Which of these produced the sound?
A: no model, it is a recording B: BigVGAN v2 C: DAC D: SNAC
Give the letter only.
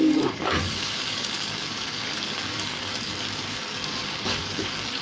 C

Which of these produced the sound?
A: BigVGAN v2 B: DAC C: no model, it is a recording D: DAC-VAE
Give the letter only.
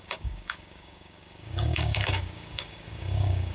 B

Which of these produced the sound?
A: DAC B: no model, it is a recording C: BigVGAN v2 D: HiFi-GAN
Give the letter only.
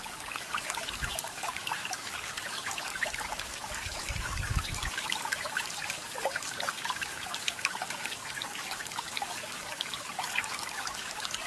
A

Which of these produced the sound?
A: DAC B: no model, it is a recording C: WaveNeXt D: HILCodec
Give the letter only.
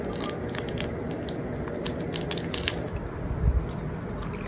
B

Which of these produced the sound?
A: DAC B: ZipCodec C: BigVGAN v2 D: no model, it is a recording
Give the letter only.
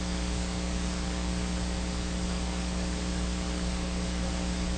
A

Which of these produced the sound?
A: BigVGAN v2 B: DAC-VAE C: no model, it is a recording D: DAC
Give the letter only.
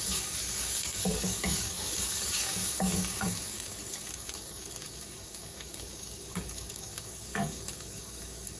D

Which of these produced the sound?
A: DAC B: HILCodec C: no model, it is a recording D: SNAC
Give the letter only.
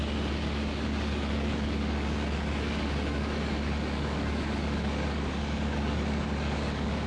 A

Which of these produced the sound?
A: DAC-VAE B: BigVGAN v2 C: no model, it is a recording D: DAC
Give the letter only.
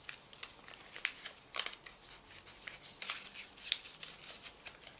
C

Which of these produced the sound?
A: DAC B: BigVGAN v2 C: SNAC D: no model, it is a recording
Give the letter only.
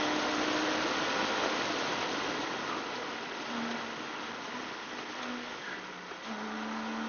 D